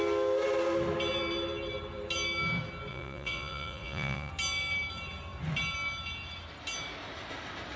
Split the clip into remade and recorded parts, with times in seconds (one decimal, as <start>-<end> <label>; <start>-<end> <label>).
0.0-2.9 recorded; 2.9-4.3 remade; 4.3-7.8 recorded